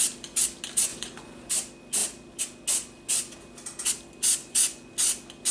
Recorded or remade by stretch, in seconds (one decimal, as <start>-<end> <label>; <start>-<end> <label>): 0.0-0.9 recorded; 0.9-1.5 remade; 1.5-4.4 recorded; 4.4-4.9 remade; 4.9-5.5 recorded